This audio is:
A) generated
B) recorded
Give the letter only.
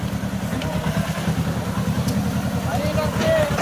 B